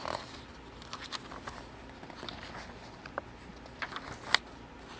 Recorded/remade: recorded